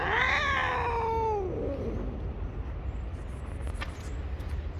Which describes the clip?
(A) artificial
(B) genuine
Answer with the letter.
B